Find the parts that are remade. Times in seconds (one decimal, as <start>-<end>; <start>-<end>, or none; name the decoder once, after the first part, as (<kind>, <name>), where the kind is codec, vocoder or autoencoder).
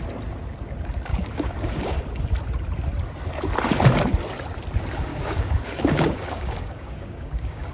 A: 1.1-2.0 (codec, DAC); 5.1-7.7